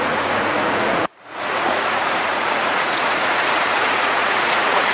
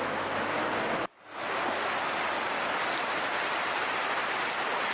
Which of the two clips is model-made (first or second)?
first